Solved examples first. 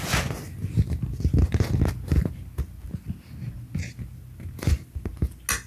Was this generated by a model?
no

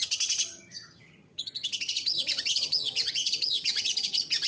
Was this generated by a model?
yes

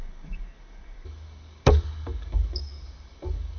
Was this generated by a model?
yes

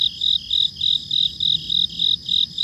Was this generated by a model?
no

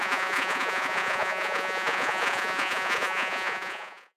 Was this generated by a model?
yes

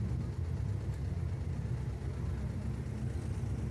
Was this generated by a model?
no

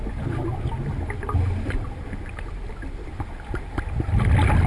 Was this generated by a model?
no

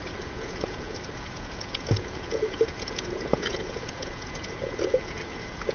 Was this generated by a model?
yes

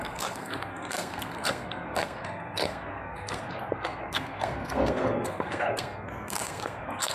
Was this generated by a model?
yes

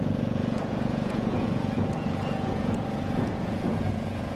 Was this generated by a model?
yes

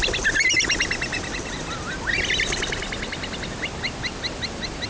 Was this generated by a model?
no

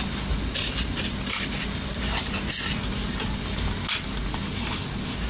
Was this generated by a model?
no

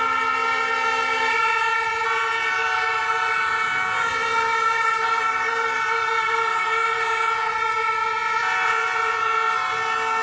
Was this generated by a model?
no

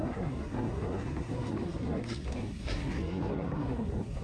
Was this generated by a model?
yes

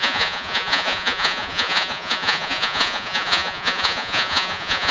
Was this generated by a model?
yes